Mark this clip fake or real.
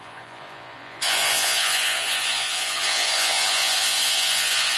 fake